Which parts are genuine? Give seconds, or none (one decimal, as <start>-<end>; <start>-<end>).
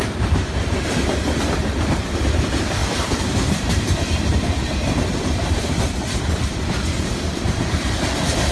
none